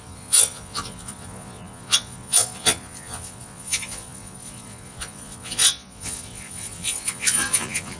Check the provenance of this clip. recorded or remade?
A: remade